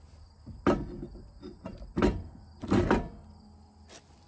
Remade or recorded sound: recorded